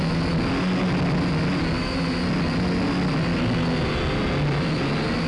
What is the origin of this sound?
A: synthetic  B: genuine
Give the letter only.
B